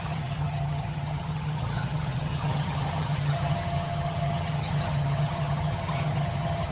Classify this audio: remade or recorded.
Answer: remade